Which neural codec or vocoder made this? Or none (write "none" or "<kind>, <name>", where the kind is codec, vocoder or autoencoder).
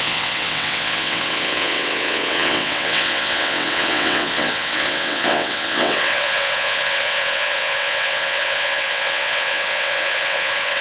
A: vocoder, WaveNeXt